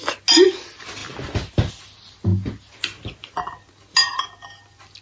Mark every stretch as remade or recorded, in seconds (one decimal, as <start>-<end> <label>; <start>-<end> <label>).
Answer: 0.0-2.3 recorded; 2.3-3.7 remade; 3.7-5.0 recorded